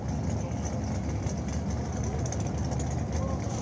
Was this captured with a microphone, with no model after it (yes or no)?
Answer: yes